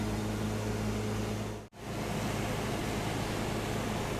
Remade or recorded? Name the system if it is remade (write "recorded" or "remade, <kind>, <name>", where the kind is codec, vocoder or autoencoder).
recorded